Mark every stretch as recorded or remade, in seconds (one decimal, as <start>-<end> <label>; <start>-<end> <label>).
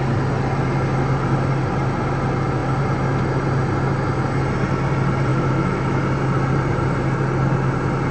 0.0-5.3 recorded; 5.3-6.0 remade; 6.0-8.1 recorded